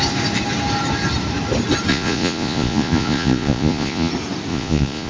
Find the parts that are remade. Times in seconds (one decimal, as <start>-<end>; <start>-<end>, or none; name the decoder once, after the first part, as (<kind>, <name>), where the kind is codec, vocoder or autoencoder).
1.9-4.1 (vocoder, Vocos); 4.5-5.1